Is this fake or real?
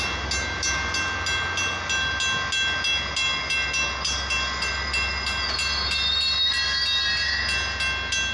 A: real